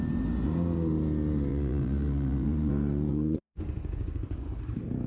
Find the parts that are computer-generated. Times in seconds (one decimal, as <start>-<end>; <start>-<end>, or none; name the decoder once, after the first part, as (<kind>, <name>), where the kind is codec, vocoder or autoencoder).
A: 1.5-2.7 (vocoder, Vocos); 3.1-4.5